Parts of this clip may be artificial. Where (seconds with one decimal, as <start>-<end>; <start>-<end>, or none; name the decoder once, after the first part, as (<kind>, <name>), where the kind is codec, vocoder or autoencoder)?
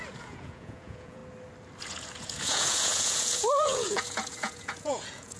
0.0-1.2 (vocoder, Vocos); 1.8-5.4